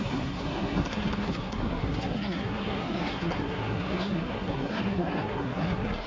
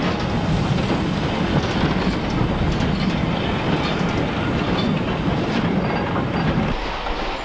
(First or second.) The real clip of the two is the second